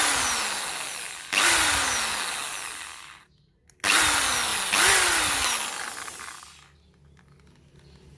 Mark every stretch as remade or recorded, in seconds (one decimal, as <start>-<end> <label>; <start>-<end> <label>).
0.0-8.2 recorded